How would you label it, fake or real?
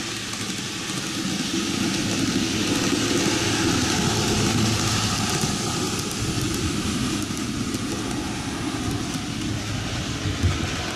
real